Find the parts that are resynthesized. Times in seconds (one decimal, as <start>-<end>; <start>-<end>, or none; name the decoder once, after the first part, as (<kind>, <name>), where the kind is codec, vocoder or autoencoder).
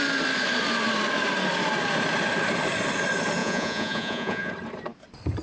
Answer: 3.4-4.5 (vocoder, Vocos)